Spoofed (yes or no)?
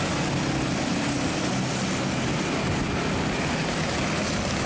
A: no